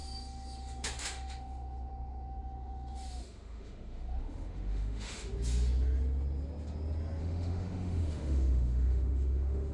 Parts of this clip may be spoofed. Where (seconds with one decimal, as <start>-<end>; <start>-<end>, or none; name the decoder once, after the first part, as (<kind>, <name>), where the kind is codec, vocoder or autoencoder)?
0.0-5.3 (autoencoder, DAC-VAE); 7.2-9.7